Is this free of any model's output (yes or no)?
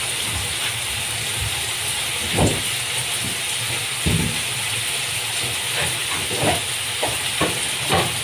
yes